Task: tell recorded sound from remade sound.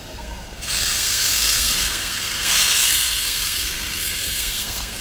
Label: remade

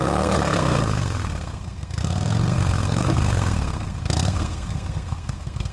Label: remade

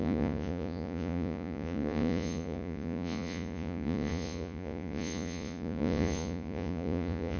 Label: remade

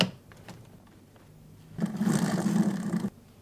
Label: recorded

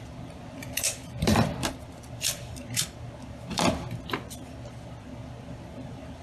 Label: remade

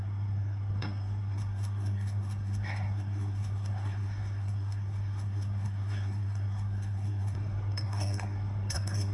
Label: remade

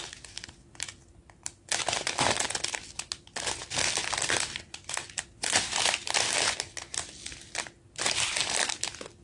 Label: recorded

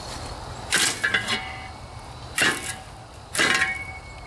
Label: recorded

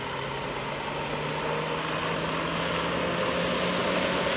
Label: recorded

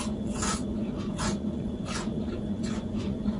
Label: remade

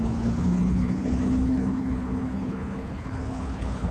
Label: remade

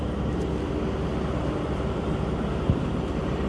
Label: remade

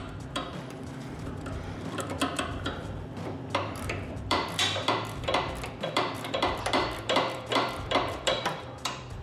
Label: remade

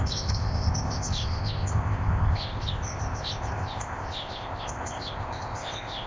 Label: remade